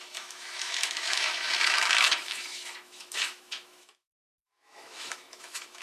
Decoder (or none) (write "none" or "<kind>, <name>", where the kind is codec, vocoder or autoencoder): autoencoder, DAC-VAE